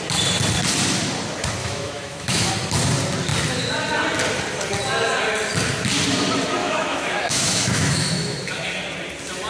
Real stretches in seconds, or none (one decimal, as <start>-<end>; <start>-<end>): 0.0-1.6; 2.5-6.6; 8.5-9.5